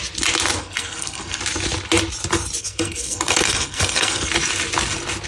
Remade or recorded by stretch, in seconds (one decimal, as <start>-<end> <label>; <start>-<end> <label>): 0.0-0.6 recorded; 0.6-1.4 remade; 1.4-2.6 recorded; 2.6-4.3 remade; 4.3-5.3 recorded